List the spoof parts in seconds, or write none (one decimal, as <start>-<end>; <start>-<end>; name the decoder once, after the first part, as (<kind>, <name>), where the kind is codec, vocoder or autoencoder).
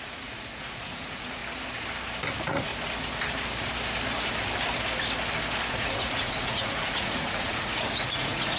0.0-1.4 (vocoder, Vocos); 2.3-2.7; 5.7-8.6